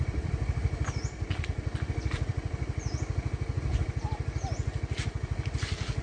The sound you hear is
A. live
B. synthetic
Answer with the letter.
A